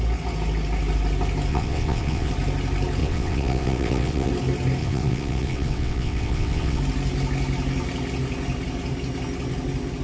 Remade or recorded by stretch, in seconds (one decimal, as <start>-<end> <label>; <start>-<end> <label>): 0.0-1.5 recorded; 1.5-2.3 remade; 2.3-3.0 recorded; 3.0-4.3 remade; 4.3-4.8 recorded; 4.8-6.8 remade; 6.8-10.0 recorded